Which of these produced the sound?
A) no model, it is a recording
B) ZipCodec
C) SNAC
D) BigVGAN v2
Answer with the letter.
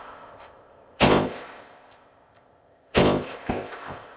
B